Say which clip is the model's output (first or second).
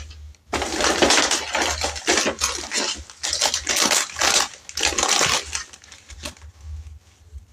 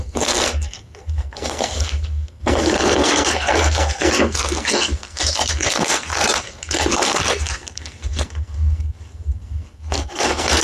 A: second